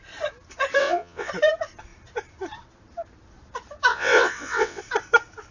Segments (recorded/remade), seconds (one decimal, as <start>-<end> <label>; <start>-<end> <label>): 0.0-0.8 recorded; 0.8-1.3 remade; 1.3-3.9 recorded; 3.9-4.8 remade; 4.8-5.5 recorded